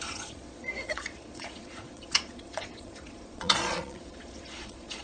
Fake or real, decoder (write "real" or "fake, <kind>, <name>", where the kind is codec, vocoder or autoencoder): fake, vocoder, Vocos